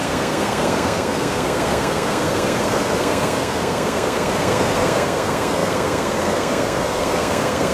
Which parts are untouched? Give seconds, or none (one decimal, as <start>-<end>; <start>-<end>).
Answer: none

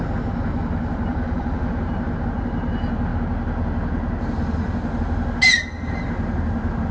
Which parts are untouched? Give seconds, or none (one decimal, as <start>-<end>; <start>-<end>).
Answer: 0.0-1.1; 1.7-6.9

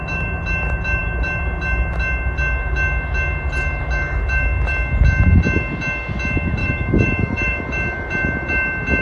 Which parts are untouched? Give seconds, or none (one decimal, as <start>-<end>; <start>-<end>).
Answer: 0.0-6.6; 7.6-9.0

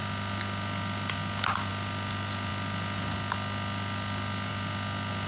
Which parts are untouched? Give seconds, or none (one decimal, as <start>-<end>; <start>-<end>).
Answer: 0.0-5.3

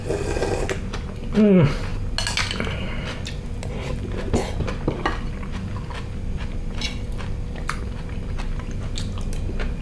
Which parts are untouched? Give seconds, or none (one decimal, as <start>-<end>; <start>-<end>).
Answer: 0.0-9.8